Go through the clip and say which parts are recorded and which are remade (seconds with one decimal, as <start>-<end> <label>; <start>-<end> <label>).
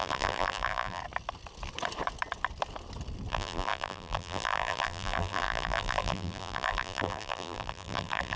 0.0-1.0 remade; 1.0-3.3 recorded; 3.3-8.4 remade